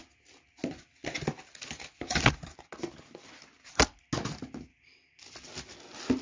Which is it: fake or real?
real